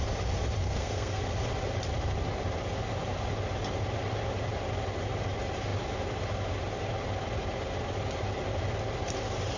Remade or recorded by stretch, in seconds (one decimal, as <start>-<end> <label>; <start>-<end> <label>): 0.0-0.6 recorded; 0.6-1.2 remade; 1.2-9.6 recorded